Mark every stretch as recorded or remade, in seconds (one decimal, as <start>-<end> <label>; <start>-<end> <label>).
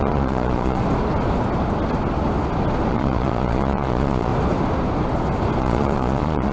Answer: 0.0-0.8 remade; 0.8-2.9 recorded; 2.9-4.3 remade; 4.3-5.6 recorded; 5.6-6.5 remade